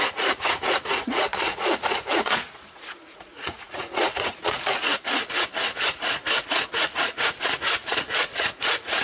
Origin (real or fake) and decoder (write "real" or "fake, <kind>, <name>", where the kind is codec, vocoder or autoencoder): fake, vocoder, Vocos